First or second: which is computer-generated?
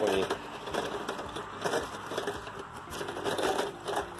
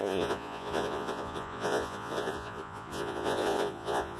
second